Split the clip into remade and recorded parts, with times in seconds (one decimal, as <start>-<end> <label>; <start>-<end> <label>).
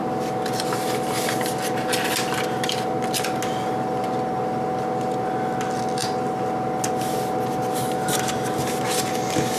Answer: 0.0-9.6 recorded